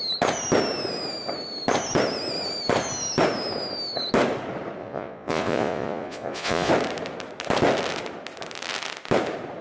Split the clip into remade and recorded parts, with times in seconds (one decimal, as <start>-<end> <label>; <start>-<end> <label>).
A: 0.0-4.8 recorded; 4.8-6.7 remade; 6.7-9.6 recorded